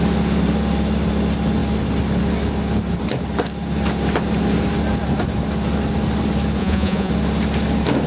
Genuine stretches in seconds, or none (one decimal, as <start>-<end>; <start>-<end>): 0.0-6.6; 7.1-8.1